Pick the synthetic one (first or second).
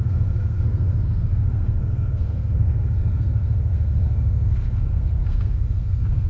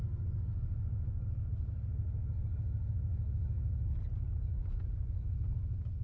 first